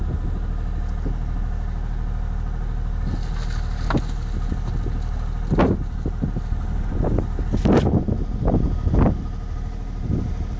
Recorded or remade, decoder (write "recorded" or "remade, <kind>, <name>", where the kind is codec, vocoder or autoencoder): recorded